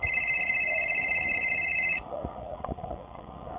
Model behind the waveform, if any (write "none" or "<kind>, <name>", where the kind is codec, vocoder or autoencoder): vocoder, Vocos